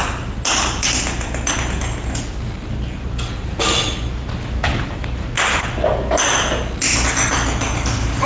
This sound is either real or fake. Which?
real